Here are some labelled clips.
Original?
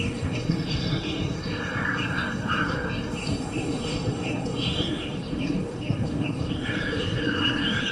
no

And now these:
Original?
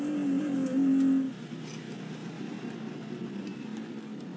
yes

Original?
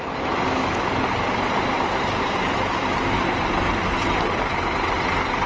yes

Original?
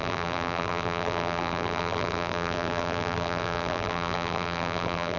no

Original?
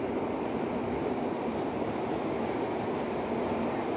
yes